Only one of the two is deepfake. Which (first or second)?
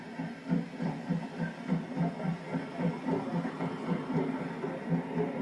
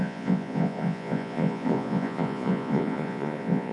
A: second